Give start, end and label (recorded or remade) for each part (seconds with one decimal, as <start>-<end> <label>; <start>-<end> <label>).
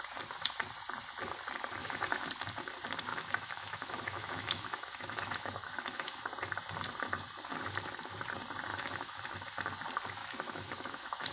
0.0-1.8 recorded; 1.8-2.3 remade; 2.3-3.1 recorded; 3.1-6.2 remade; 6.2-8.7 recorded; 8.7-9.2 remade; 9.2-10.2 recorded; 10.2-11.3 remade